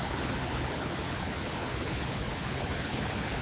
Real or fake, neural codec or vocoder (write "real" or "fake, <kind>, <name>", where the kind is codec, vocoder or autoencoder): fake, codec, HILCodec